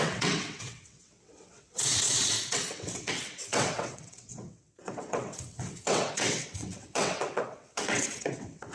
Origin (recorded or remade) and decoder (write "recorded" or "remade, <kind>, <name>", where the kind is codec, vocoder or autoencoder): remade, vocoder, WaveNeXt